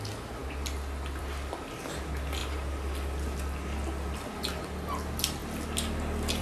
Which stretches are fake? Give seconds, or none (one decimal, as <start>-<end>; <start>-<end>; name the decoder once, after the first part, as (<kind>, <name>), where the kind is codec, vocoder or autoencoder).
none